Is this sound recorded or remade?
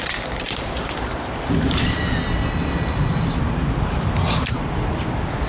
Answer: recorded